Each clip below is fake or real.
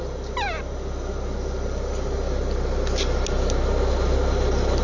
real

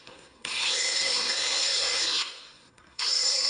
fake